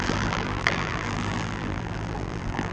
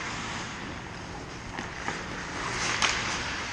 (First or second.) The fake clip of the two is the first